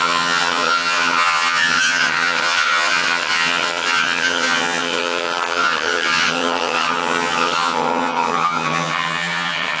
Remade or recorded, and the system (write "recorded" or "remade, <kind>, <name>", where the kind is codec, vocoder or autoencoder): remade, vocoder, HiFi-GAN